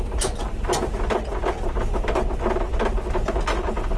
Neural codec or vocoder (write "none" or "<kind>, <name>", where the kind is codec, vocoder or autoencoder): none